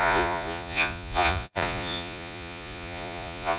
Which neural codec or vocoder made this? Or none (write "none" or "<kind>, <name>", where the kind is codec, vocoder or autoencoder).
vocoder, Vocos